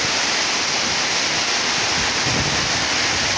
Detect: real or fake real